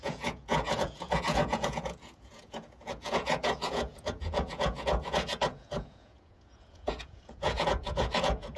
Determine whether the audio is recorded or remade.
remade